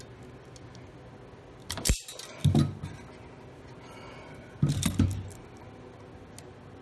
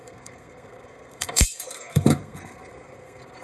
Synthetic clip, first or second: second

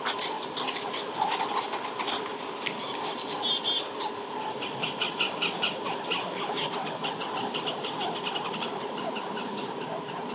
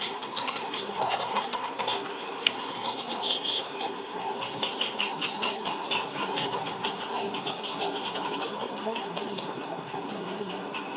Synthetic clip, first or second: second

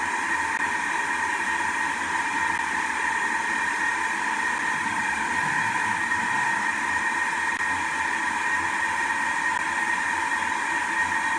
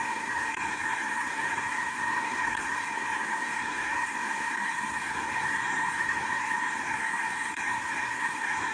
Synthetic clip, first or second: second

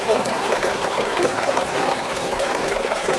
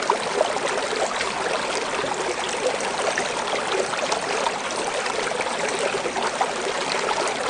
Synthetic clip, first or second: first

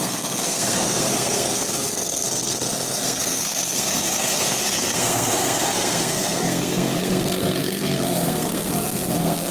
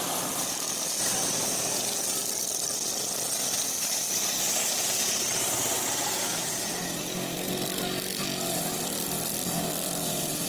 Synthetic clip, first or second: first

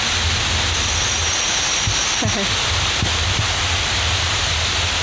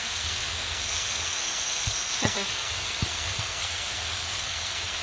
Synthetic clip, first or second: second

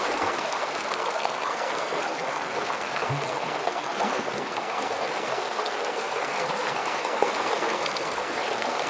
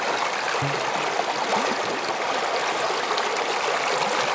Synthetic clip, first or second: first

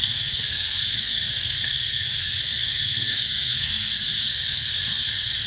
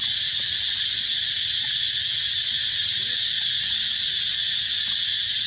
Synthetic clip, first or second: first